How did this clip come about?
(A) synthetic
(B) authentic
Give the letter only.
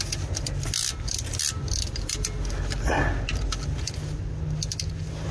B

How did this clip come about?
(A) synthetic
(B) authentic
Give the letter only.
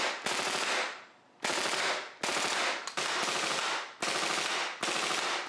B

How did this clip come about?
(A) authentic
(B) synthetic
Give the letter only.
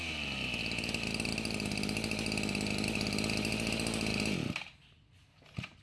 A